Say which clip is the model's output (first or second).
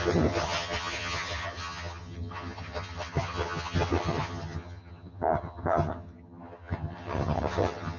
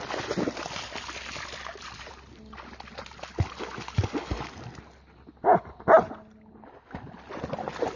first